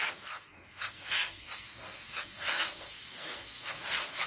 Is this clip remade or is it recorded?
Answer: remade